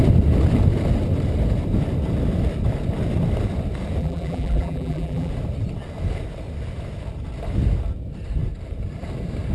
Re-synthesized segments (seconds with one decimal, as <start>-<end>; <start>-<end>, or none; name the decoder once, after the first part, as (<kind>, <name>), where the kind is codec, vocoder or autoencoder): 4.0-5.3 (vocoder, BigVGAN v2)